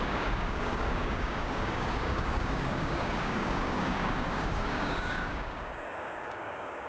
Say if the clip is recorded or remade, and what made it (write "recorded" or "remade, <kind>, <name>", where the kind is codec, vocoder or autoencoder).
remade, codec, DAC